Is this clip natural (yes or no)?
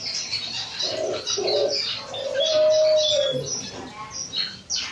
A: yes